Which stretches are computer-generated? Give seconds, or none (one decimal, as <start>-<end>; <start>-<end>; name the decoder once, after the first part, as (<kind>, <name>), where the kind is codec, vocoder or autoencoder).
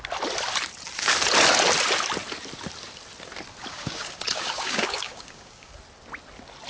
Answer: 3.7-5.7 (codec, DAC)